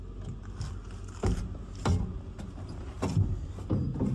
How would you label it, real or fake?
real